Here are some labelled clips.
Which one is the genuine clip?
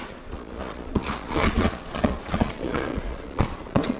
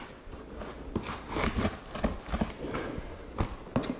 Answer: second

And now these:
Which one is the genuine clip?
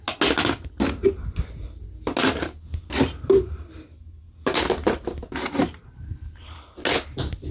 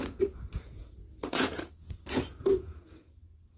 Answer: first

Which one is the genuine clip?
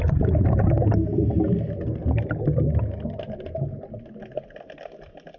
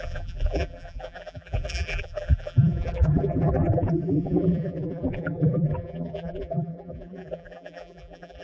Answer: first